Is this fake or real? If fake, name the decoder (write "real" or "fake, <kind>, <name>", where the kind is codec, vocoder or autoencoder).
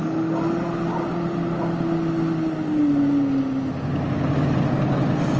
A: real